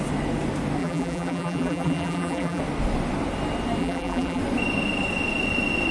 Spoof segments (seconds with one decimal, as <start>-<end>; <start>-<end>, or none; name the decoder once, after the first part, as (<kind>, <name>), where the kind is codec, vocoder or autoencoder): 0.8-2.6 (vocoder, BigVGAN v2); 3.8-4.4